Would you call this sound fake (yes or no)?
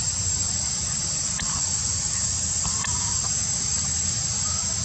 no